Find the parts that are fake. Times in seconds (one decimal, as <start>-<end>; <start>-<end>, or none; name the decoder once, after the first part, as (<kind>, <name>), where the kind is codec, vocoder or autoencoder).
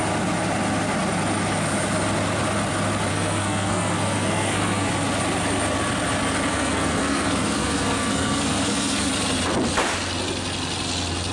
3.1-4.9 (codec, SNAC); 6.5-9.1